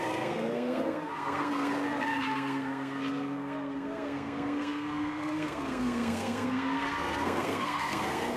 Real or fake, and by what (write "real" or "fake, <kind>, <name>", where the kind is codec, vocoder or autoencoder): fake, codec, SNAC